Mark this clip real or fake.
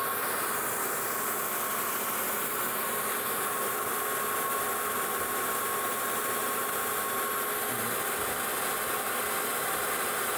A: real